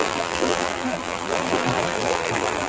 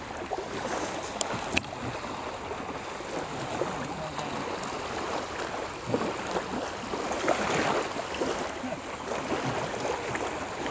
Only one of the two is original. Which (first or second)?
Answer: second